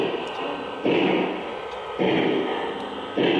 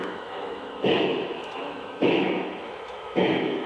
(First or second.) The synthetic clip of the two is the second